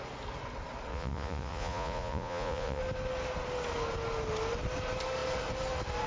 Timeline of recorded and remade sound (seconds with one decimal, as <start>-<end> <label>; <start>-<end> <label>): 0.0-0.9 recorded; 0.9-2.8 remade; 2.8-6.1 recorded